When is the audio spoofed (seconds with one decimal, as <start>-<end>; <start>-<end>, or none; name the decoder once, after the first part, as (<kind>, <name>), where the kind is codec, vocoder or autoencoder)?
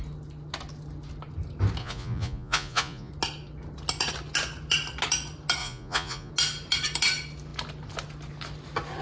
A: 1.8-3.1 (vocoder, Vocos); 5.6-6.3